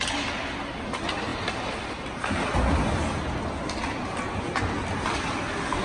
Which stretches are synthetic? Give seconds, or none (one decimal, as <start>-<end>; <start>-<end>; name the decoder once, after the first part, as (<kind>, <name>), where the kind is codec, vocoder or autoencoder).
none